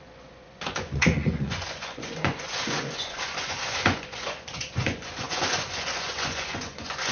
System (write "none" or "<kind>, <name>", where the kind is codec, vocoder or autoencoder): vocoder, Vocos